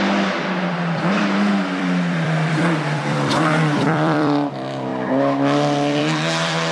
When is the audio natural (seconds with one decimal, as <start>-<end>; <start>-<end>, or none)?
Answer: 4.9-6.0